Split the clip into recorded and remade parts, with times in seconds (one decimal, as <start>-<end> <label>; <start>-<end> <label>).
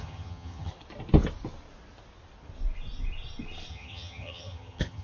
0.0-0.7 remade; 0.7-3.7 recorded; 3.7-5.0 remade